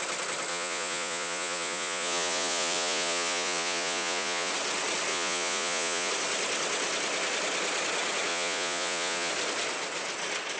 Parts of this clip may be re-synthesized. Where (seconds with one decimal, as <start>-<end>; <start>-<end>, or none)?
0.5-4.5; 5.1-6.1; 8.3-9.3

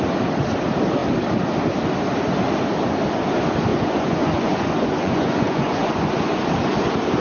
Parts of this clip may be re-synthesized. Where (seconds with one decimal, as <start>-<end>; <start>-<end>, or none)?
3.7-6.4